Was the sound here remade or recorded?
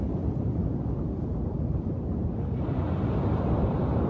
recorded